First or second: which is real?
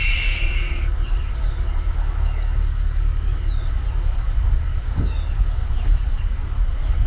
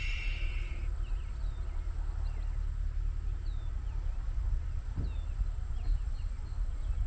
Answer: second